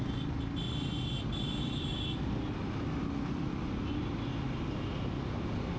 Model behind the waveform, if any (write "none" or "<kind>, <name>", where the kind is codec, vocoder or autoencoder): none